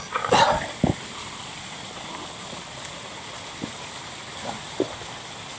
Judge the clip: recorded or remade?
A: recorded